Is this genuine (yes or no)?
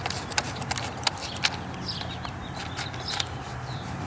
no